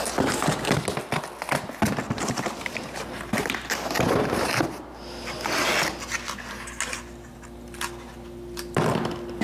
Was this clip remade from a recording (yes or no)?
no